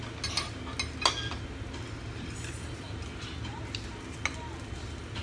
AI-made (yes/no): no